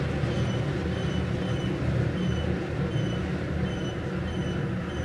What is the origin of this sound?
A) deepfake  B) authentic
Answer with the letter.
B